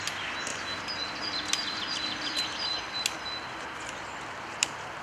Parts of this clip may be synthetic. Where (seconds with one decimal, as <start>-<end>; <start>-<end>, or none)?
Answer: 0.5-2.8